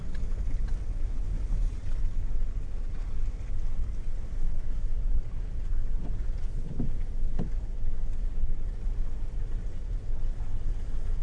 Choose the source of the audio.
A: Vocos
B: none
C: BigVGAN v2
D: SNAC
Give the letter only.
B